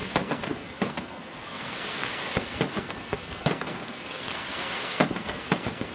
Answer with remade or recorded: remade